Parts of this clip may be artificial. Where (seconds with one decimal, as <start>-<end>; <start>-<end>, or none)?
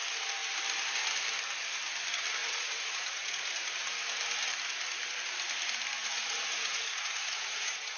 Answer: 2.4-3.7; 6.0-8.0